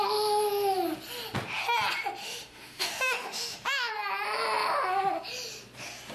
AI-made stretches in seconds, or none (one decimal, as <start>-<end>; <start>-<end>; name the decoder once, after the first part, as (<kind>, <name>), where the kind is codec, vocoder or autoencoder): 2.2-3.9 (autoencoder, DAC-VAE)